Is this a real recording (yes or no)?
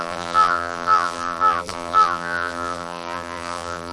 no